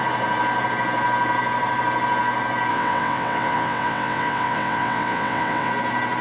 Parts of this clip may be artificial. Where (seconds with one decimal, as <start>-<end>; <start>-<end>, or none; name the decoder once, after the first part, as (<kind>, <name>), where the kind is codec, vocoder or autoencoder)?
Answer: 2.7-5.7 (vocoder, WaveNeXt)